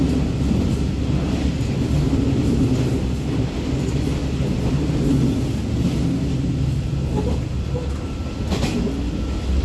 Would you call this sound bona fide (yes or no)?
yes